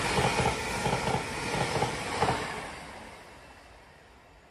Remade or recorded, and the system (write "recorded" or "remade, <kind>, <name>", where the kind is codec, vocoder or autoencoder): recorded